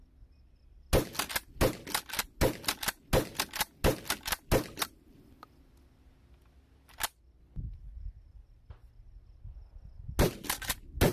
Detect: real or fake real